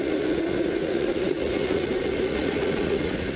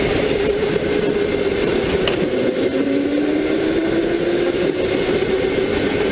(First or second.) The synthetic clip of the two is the first